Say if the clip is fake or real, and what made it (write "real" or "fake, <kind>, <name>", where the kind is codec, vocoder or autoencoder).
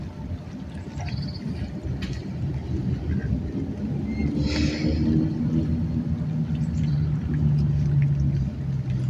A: real